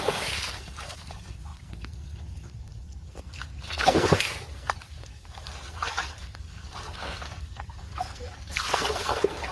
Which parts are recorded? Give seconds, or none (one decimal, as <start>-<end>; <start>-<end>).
none

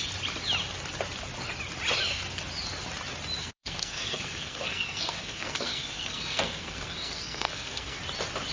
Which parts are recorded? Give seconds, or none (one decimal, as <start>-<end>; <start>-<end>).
0.0-3.4; 8.0-8.5